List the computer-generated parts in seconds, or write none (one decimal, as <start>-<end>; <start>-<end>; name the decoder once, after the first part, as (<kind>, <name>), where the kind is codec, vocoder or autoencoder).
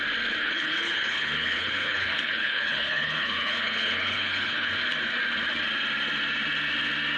0.4-4.7 (codec, HILCodec)